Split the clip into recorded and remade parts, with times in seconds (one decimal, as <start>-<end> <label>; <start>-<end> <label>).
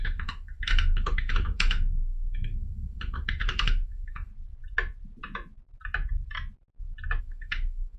0.0-4.3 remade; 4.3-7.2 recorded; 7.2-8.0 remade